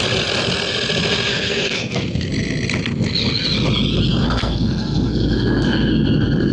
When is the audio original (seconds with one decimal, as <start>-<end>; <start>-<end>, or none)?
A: 0.0-1.3; 2.3-4.1